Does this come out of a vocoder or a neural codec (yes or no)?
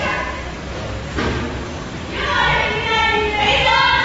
no